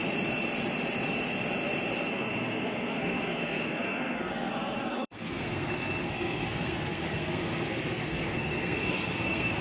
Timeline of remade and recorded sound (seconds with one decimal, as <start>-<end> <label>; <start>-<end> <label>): 0.0-2.1 recorded; 2.1-9.6 remade